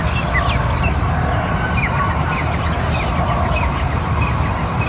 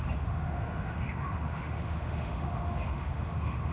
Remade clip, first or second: second